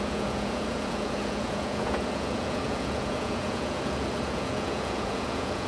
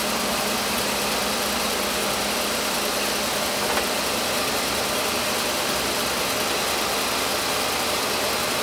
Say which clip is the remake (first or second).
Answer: first